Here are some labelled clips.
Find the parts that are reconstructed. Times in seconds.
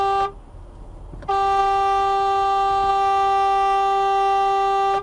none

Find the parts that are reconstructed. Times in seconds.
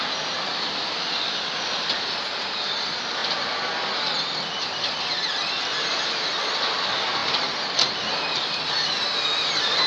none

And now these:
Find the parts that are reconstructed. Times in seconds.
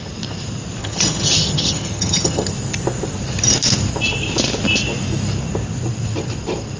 0.8-2.5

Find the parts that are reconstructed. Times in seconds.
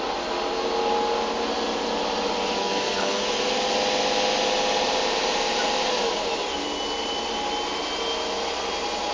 2.6-3.2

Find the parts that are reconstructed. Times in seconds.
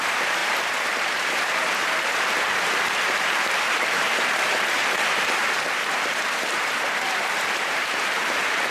0.0-8.7